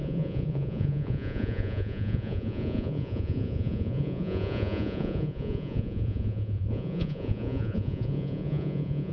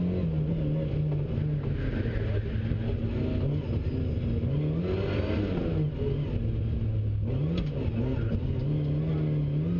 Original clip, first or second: second